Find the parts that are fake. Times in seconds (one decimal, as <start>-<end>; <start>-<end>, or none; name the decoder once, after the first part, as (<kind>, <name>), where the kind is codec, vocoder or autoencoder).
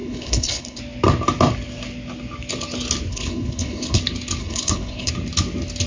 0.0-0.8 (codec, HILCodec); 3.1-4.0; 4.4-5.1